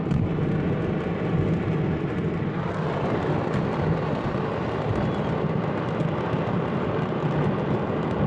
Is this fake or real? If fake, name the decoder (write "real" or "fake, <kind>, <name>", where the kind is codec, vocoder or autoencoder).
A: real